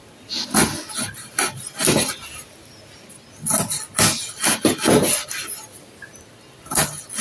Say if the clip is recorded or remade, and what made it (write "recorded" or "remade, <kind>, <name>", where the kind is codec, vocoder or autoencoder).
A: recorded